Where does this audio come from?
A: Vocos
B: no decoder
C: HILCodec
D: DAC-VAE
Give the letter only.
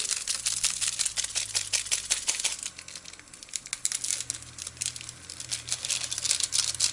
B